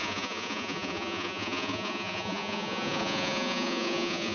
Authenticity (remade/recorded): remade